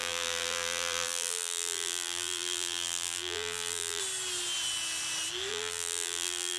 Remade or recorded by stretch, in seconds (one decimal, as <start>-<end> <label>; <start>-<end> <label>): 0.0-4.0 remade; 4.0-5.5 recorded; 5.5-6.6 remade